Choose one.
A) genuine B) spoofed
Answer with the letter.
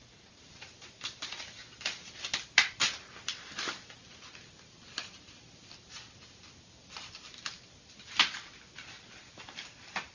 A